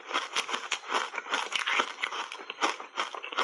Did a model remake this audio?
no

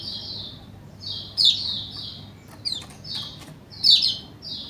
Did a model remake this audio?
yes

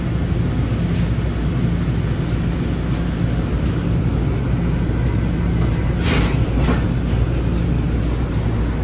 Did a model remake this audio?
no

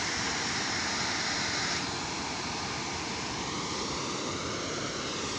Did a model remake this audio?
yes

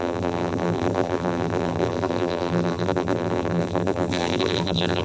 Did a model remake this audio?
yes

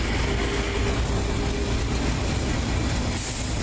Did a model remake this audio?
no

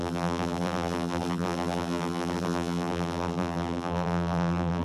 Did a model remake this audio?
yes